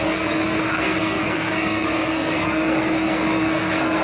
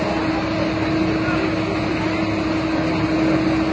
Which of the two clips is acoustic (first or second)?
second